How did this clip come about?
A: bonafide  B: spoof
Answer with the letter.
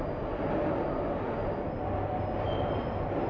A